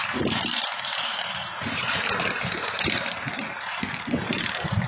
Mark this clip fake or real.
fake